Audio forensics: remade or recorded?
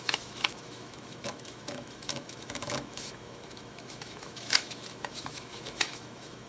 remade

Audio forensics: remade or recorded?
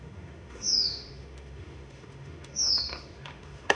remade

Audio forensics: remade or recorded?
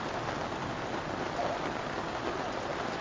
recorded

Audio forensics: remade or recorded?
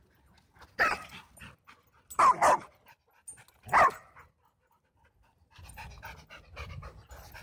recorded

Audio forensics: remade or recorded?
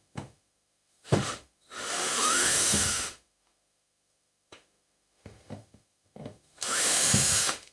remade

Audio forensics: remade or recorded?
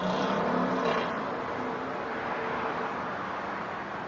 recorded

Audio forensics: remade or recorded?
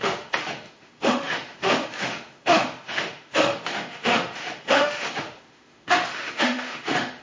remade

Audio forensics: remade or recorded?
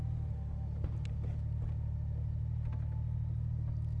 recorded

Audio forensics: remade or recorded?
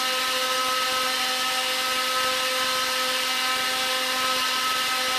recorded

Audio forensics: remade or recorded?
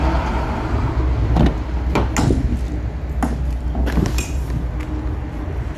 recorded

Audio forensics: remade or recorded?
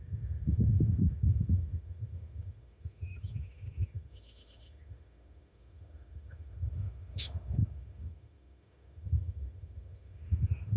remade